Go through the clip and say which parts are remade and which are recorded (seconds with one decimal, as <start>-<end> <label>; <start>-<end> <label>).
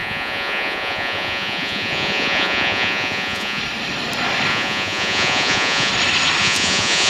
0.0-3.6 remade; 3.6-4.5 recorded; 4.5-5.9 remade; 5.9-6.4 recorded; 6.4-7.1 remade